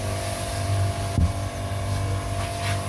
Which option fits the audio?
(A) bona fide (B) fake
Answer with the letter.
A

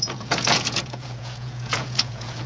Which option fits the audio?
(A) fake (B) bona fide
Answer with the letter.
A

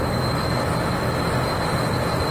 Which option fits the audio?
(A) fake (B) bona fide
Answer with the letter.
B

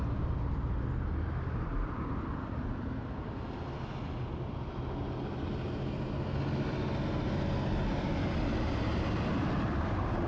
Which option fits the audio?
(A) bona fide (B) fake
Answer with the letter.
A